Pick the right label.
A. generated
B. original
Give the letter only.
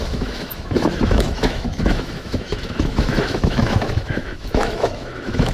A